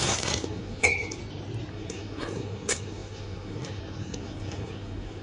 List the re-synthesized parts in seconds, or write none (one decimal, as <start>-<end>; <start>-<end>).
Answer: 0.0-1.2; 1.7-5.2